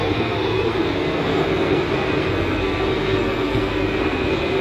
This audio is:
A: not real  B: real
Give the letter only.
A